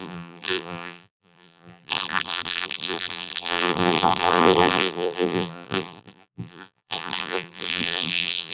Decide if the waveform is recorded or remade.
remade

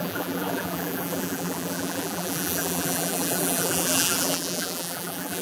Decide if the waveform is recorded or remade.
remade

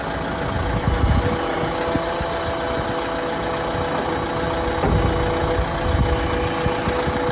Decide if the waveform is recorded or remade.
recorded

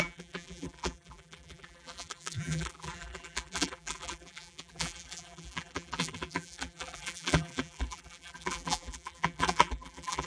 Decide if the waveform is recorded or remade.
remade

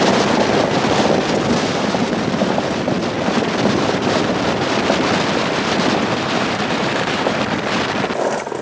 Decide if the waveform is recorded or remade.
remade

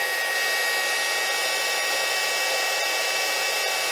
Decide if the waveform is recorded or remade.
recorded